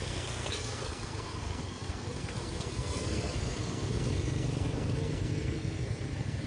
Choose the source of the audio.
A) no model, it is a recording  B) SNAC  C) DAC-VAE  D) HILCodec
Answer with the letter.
B